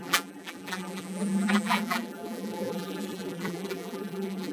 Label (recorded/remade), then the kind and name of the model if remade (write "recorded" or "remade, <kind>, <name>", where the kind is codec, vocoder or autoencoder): remade, vocoder, BigVGAN v2